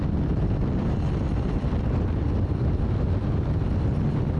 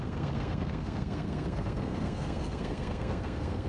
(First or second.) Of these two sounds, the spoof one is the second